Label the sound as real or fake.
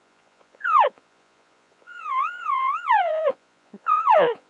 fake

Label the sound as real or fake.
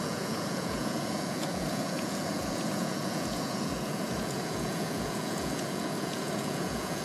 fake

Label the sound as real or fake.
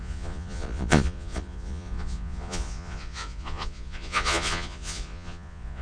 fake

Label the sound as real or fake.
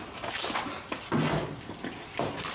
real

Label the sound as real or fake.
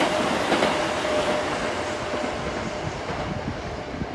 real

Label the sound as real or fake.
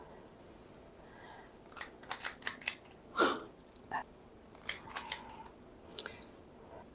real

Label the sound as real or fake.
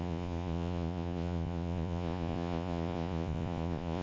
fake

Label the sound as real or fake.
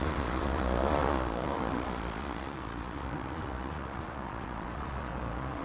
fake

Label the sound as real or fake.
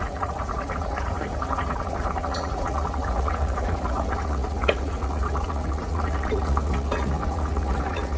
fake